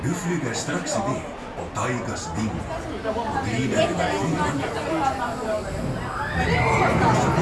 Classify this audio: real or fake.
real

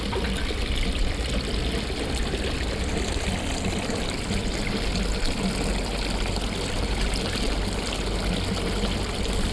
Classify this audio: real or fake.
real